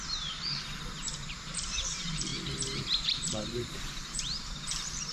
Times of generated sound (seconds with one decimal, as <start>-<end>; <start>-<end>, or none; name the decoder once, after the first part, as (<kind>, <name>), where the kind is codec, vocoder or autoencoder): 0.0-2.3 (vocoder, BigVGAN v2); 3.0-5.1